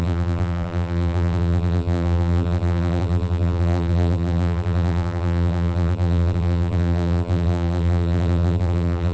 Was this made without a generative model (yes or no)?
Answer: no